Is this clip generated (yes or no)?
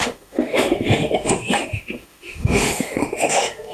yes